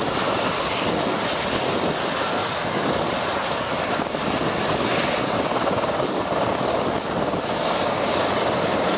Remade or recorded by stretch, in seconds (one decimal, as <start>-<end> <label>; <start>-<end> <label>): 0.0-9.0 recorded